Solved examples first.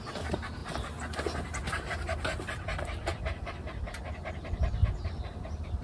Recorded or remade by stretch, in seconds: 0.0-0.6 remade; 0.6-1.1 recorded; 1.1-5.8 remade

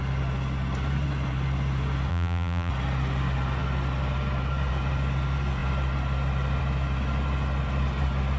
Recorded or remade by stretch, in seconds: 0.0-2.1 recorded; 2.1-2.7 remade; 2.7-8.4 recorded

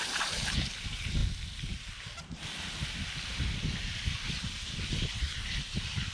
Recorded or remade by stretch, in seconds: 0.0-1.2 remade; 1.2-4.9 recorded; 4.9-6.1 remade